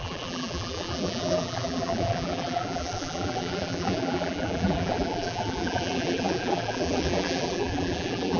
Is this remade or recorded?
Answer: remade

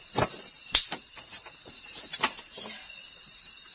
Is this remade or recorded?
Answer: remade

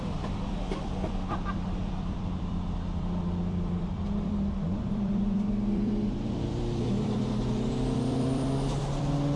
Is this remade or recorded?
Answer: remade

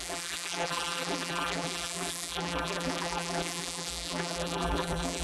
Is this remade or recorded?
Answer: remade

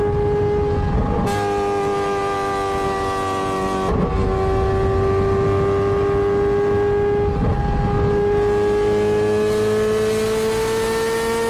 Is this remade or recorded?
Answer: recorded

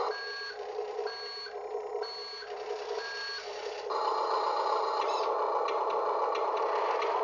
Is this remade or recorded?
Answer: recorded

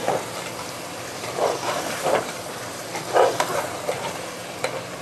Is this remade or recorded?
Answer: remade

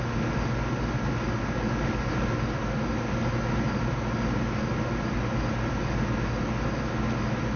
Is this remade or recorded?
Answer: recorded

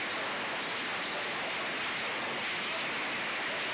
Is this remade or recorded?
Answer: recorded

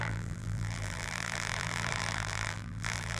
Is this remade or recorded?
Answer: remade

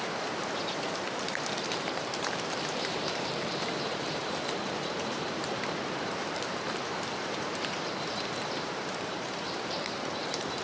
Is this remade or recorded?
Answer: remade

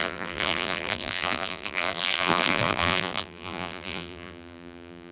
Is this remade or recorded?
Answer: remade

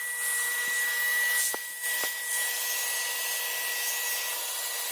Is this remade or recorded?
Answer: recorded